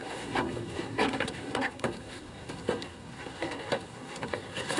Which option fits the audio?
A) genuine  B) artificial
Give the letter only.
B